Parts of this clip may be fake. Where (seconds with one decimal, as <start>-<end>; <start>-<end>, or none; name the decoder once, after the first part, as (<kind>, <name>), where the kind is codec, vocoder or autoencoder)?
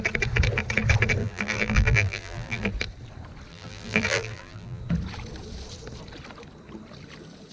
1.2-2.7 (vocoder, BigVGAN v2); 3.5-4.8